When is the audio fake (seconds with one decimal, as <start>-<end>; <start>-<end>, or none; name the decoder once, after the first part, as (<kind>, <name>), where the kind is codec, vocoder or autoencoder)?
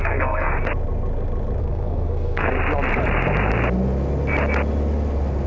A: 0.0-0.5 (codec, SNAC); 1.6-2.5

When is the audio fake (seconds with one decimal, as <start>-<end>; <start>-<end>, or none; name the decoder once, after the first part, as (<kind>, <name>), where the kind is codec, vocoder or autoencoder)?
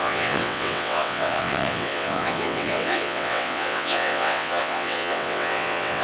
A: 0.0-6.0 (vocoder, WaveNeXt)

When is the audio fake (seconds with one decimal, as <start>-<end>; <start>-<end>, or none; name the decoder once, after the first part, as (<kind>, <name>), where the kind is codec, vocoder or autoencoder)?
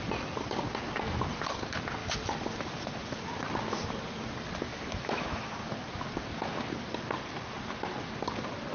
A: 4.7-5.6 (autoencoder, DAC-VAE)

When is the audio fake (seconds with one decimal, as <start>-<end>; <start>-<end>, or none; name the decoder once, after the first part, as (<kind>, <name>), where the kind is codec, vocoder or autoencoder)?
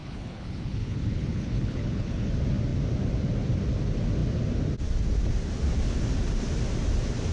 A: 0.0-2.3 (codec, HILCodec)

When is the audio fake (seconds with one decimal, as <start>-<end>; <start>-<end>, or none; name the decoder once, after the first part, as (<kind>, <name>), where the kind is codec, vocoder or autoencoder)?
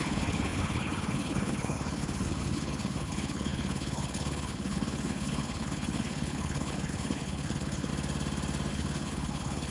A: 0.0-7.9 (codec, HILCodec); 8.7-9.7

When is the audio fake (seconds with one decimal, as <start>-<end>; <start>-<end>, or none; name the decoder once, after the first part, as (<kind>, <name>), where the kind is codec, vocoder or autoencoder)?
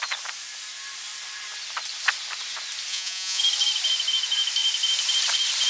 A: 2.9-3.4 (vocoder, Vocos)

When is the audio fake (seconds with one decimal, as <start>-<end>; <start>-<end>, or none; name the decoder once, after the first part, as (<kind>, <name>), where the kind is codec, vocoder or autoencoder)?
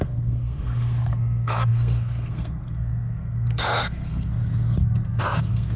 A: 0.0-5.8 (codec, SNAC)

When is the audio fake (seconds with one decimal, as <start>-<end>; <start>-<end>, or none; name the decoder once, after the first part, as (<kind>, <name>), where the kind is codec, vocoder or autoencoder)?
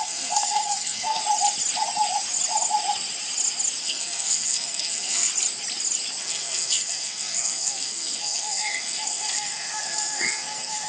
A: 0.0-1.2 (codec, SNAC); 3.8-5.3; 6.2-10.9